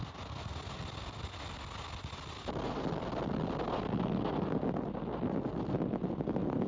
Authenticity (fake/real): real